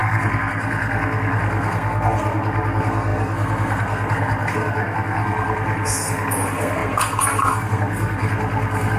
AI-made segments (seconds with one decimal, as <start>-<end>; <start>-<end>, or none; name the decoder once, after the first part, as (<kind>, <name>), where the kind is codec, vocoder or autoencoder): 0.0-9.0 (codec, SNAC)